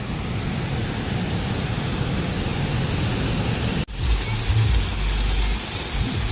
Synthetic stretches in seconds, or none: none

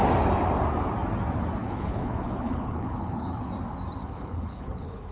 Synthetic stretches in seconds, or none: 1.6-3.5 (codec, HILCodec); 4.0-5.1

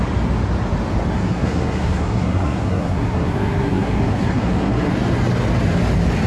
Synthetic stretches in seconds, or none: 1.1-4.9 (codec, SNAC)

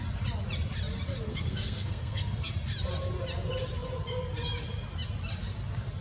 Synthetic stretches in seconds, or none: 1.3-2.5 (codec, SNAC)

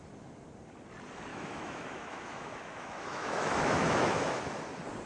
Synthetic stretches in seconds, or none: 1.3-4.4 (autoencoder, DAC-VAE)